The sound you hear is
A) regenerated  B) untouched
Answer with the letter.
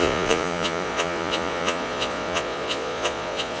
A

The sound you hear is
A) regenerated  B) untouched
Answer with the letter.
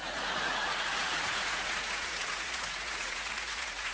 A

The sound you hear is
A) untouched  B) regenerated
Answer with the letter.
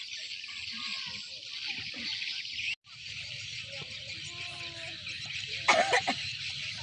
A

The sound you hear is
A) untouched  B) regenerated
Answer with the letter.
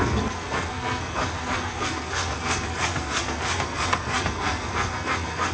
B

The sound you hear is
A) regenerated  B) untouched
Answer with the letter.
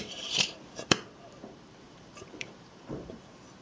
A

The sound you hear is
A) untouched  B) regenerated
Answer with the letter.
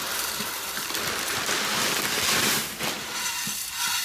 A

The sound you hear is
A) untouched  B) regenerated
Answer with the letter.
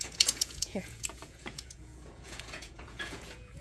B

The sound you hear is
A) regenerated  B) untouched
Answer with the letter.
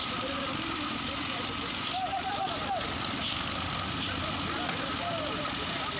B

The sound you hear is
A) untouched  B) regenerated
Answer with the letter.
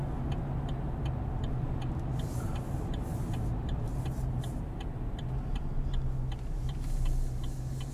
A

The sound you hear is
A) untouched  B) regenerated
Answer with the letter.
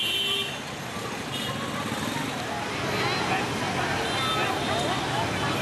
A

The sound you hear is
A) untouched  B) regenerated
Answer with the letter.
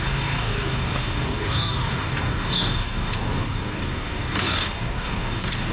B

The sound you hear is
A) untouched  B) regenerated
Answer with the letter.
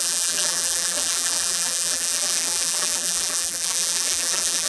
B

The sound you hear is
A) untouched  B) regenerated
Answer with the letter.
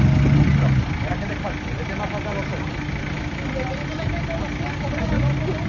A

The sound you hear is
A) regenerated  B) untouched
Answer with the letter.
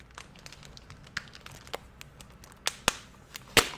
B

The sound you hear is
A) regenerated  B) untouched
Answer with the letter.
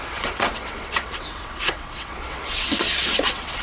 A